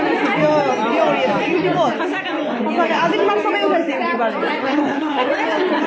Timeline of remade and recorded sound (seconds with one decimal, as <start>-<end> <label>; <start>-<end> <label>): 0.0-4.6 recorded; 4.6-5.3 remade; 5.3-5.9 recorded